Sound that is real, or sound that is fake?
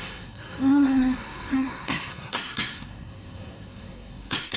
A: fake